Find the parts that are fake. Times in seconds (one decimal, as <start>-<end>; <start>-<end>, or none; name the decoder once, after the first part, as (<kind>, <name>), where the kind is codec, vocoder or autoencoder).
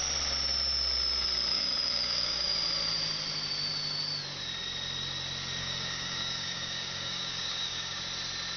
1.5-2.5 (codec, DAC); 5.6-8.0